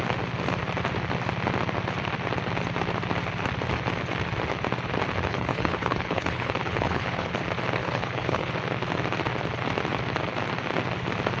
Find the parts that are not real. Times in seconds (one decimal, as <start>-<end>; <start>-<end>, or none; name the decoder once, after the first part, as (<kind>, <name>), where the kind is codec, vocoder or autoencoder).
5.3-7.3 (codec, HILCodec); 7.8-8.5